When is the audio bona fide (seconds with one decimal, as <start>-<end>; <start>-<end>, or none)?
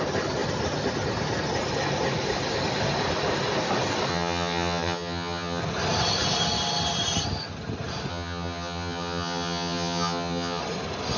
0.0-4.1; 5.6-8.1; 10.6-11.2